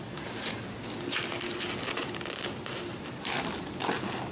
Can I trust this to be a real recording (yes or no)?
yes